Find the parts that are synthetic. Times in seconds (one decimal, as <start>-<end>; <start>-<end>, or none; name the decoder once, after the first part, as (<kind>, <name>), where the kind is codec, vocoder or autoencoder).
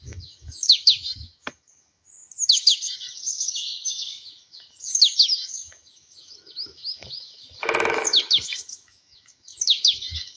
0.0-10.4 (autoencoder, DAC-VAE)